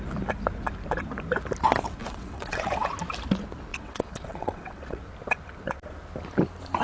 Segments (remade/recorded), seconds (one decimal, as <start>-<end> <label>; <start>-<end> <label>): 0.0-2.0 recorded; 2.0-2.9 remade; 2.9-3.7 recorded; 3.7-5.0 remade; 5.0-6.8 recorded

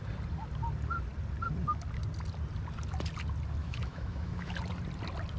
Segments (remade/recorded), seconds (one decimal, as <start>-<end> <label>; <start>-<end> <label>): 0.0-3.6 recorded; 3.6-4.5 remade; 4.5-5.4 recorded